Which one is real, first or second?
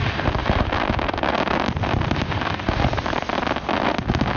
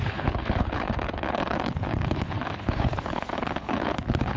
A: first